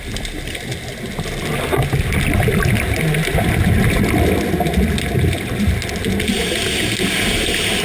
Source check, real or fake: real